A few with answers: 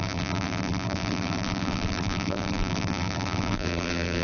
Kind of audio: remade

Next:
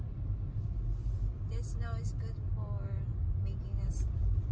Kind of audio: recorded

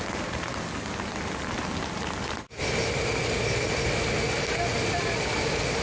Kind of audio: recorded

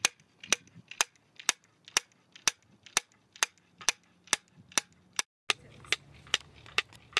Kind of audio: recorded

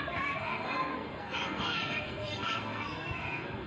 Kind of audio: remade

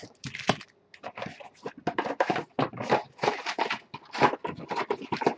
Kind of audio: recorded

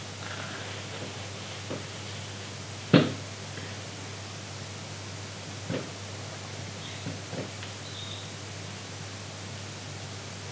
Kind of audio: recorded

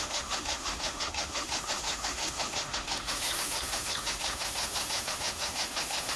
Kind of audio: remade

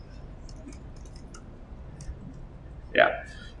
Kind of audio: recorded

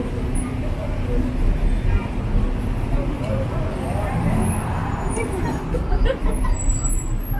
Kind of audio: recorded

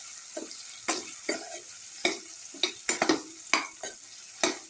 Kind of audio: recorded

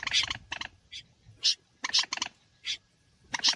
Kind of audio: recorded